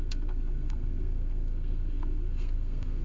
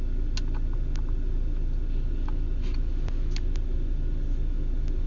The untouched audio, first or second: second